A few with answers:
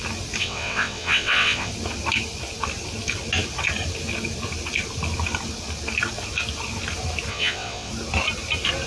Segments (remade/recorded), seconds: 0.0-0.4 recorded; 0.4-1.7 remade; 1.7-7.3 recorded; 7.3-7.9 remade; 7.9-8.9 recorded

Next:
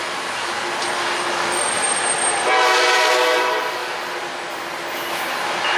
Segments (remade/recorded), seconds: 0.0-5.8 recorded

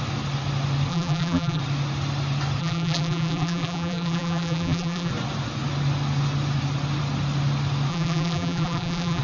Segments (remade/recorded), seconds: 0.0-0.9 recorded; 0.9-1.6 remade; 1.6-2.6 recorded; 2.6-5.1 remade; 5.1-7.9 recorded; 7.9-9.2 remade

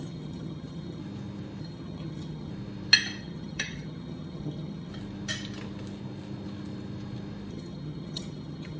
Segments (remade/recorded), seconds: 0.0-1.0 remade; 1.0-1.6 recorded; 1.6-2.5 remade; 2.5-3.2 recorded; 3.2-4.9 remade; 4.9-7.5 recorded; 7.5-8.8 remade

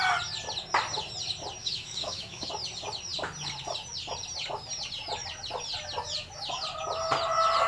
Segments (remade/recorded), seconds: 0.0-1.6 recorded; 1.6-2.5 remade; 2.5-7.7 recorded

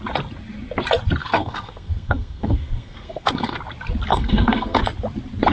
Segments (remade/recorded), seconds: 0.0-1.2 recorded; 1.2-3.6 remade; 3.6-4.1 recorded; 4.1-4.8 remade; 4.8-5.5 recorded